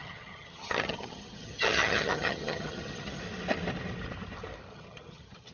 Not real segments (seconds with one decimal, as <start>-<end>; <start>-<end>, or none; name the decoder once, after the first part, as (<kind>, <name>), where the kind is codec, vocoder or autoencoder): 0.0-3.2 (vocoder, HiFi-GAN); 4.7-5.5

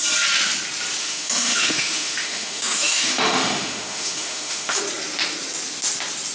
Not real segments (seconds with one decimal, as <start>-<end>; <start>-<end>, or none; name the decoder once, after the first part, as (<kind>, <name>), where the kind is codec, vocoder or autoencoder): 1.0-4.8 (autoencoder, DAC-VAE)

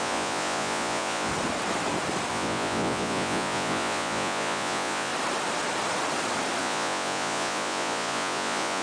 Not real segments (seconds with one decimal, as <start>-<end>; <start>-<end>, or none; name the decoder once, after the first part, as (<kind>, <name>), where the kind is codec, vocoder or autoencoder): 0.0-1.3 (vocoder, Vocos); 2.3-5.1; 6.6-8.8

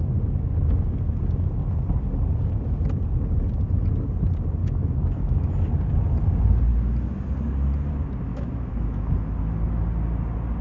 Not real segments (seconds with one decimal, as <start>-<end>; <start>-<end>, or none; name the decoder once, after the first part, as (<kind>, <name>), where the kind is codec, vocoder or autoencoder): 4.6-5.7 (autoencoder, DAC-VAE); 8.3-9.1

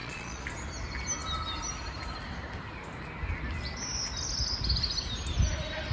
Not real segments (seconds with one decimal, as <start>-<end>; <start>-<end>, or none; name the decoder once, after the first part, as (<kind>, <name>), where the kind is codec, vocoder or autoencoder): 0.0-0.5 (vocoder, Vocos)

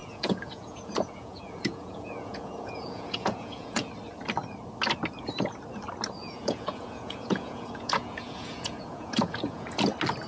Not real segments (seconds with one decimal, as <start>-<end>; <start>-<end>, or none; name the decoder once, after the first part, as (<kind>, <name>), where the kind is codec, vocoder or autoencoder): 0.0-3.9 (vocoder, Vocos); 6.2-9.8

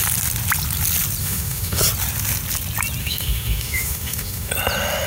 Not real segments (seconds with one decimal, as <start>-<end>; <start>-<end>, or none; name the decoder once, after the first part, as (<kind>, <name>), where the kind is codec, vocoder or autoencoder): 1.2-1.8 (autoencoder, DAC-VAE); 3.0-4.5

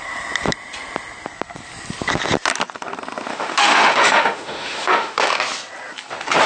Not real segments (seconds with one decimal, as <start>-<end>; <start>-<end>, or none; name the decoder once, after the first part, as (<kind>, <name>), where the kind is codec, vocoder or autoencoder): 3.3-5.4 (autoencoder, DAC-VAE)